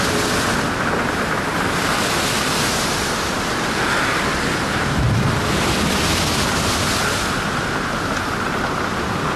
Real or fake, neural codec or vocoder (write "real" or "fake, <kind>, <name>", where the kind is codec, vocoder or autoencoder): real